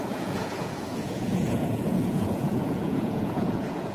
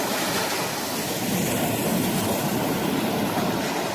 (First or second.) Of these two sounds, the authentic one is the second